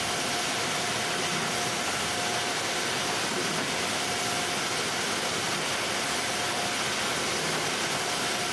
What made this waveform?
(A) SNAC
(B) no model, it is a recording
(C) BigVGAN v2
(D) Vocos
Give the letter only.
B